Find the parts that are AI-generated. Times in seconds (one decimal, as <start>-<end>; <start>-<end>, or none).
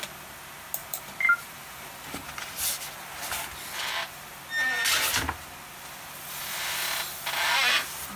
0.8-2.3